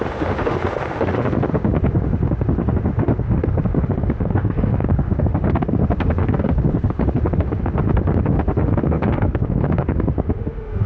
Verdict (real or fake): fake